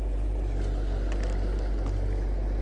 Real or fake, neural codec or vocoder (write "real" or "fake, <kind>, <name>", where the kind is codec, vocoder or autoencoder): real